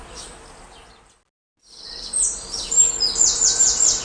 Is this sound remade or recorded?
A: recorded